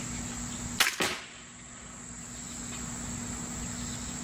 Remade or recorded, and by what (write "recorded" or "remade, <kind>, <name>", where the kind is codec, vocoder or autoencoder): recorded